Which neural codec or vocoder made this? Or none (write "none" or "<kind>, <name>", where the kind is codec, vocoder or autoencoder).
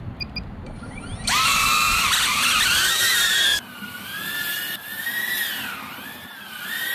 vocoder, BigVGAN v2